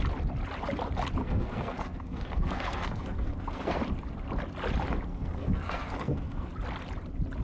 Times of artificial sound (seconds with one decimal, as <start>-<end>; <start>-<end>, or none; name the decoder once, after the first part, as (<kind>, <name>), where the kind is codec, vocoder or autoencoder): 1.2-3.8 (codec, SNAC); 5.1-6.5